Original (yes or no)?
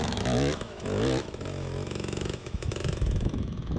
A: no